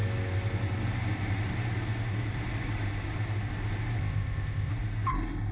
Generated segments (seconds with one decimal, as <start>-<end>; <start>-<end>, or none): 4.0-4.7